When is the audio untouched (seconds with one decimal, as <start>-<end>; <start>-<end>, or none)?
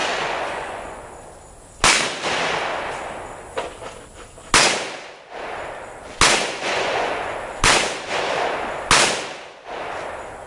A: 1.0-6.4; 7.3-10.5